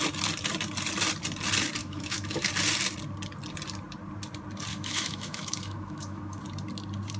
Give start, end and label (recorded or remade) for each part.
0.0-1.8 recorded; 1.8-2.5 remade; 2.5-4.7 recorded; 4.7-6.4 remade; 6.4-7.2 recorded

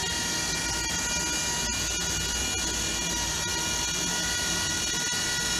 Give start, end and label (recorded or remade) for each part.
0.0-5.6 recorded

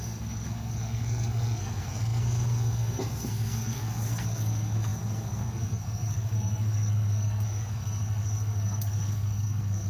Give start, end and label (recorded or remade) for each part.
0.0-9.9 remade

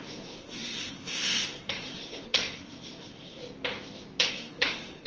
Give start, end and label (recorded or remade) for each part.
0.0-3.4 remade; 3.4-4.3 recorded; 4.3-5.1 remade